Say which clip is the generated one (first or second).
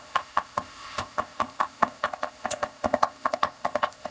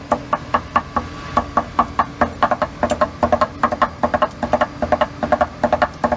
first